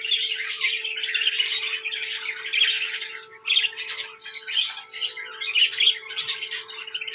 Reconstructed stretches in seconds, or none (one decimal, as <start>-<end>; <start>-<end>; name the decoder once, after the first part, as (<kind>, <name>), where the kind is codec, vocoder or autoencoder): none